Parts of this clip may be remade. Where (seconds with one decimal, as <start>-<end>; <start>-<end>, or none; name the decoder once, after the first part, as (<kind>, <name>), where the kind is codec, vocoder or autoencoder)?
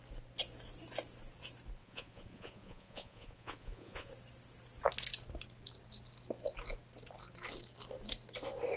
1.8-4.1 (vocoder, Vocos)